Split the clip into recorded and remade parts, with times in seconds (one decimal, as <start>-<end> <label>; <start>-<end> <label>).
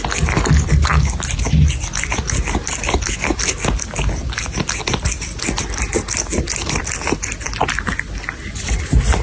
0.0-9.2 recorded